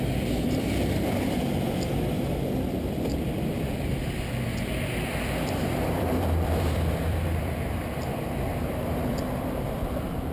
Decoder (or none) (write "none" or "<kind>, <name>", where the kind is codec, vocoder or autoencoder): vocoder, BigVGAN v2